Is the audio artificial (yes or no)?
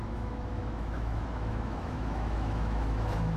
yes